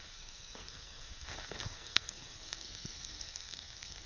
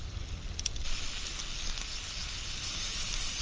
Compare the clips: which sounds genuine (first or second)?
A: second